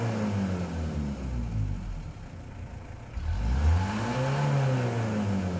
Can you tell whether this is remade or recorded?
recorded